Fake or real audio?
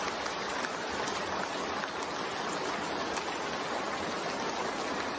real